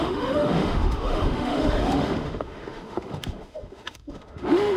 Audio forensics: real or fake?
fake